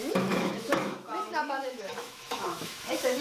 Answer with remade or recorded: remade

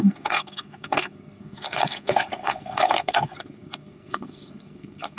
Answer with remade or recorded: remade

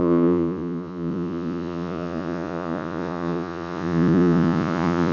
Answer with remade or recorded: remade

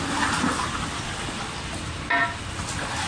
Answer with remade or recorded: recorded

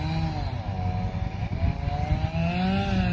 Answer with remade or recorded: recorded